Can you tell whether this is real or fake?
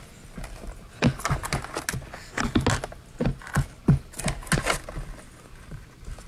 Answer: real